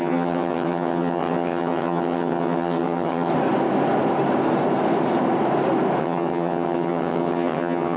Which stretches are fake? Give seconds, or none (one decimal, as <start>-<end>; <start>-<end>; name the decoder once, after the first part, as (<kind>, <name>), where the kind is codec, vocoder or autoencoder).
0.0-3.3 (vocoder, HiFi-GAN); 6.0-8.0